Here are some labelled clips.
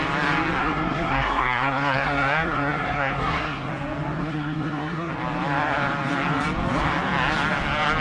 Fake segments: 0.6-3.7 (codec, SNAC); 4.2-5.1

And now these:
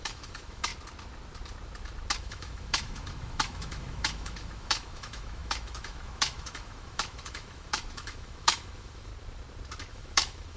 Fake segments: 0.0-0.7 (autoencoder, DAC-VAE); 2.2-9.1; 9.9-10.6

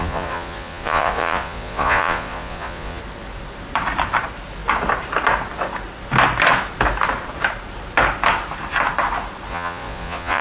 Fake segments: 0.0-3.0 (vocoder, Vocos); 9.5-10.4

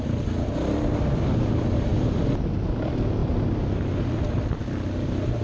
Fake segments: none

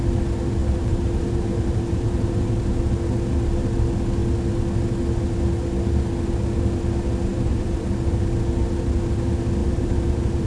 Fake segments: 0.6-2.5 (vocoder, BigVGAN v2); 7.3-8.3; 9.6-10.5

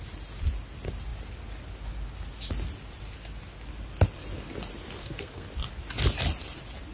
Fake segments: 5.0-5.5 (codec, SNAC)

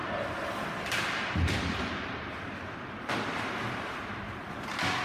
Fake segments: 0.0-0.5 (vocoder, BigVGAN v2); 1.2-4.2